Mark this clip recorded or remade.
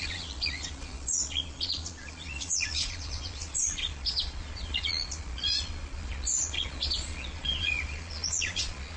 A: remade